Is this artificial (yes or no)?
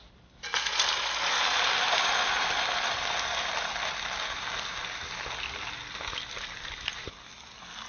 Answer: no